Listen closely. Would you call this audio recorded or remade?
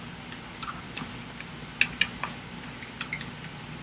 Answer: recorded